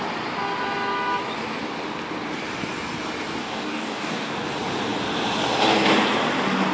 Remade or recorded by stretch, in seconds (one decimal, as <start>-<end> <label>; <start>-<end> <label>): 0.0-3.4 recorded; 3.4-4.3 remade; 4.3-6.7 recorded